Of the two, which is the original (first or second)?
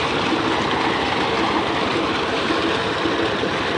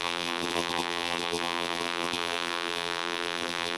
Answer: first